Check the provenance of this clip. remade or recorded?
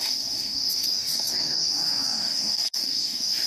remade